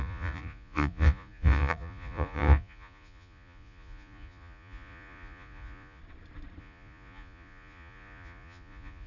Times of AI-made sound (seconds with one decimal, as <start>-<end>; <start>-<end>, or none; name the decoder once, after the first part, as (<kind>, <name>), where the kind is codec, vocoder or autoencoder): 0.0-6.0 (vocoder, Vocos); 6.6-9.1

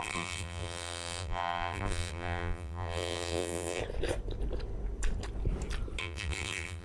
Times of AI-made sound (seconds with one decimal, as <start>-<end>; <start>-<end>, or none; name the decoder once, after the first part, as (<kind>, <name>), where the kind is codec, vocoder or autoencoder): 0.0-3.8 (vocoder, BigVGAN v2); 6.0-6.8

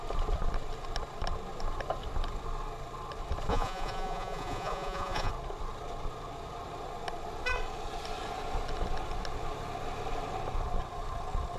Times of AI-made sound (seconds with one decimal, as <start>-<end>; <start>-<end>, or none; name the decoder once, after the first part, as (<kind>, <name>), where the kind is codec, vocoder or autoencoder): 3.5-5.3 (vocoder, Vocos)

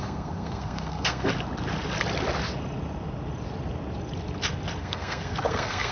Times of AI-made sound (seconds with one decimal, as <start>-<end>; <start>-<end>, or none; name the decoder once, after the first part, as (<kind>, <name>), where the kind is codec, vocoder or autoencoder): 0.0-1.3 (codec, SNAC); 4.8-5.9